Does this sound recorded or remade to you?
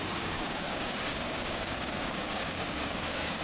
remade